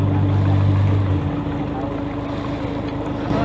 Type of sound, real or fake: real